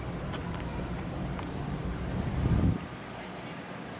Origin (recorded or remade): remade